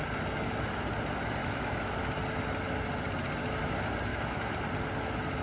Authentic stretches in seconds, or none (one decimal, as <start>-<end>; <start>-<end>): 0.0-1.4; 2.0-4.1; 4.6-5.4